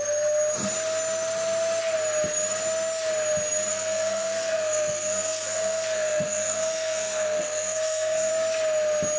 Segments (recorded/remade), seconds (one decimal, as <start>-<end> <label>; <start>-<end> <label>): 0.0-3.7 recorded; 3.7-8.3 remade; 8.3-9.2 recorded